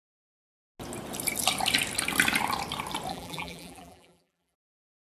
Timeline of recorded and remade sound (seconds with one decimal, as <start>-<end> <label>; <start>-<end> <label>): 0.0-3.1 recorded; 3.1-5.2 remade